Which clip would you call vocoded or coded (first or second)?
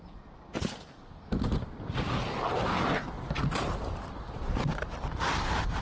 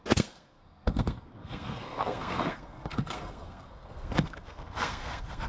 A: second